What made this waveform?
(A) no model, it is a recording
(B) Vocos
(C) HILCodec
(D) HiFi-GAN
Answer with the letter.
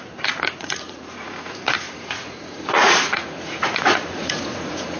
B